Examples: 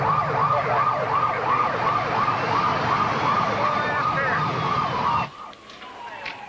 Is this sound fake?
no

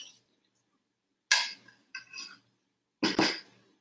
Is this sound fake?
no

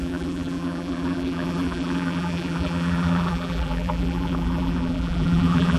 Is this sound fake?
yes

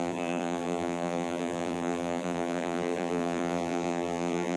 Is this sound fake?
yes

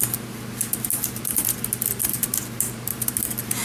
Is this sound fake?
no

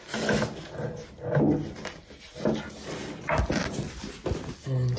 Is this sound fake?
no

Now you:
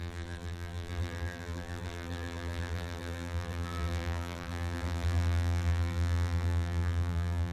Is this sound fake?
yes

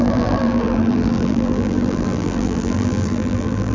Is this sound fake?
yes